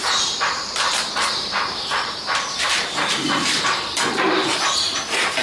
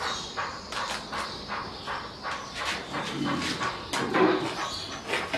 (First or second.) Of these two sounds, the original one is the second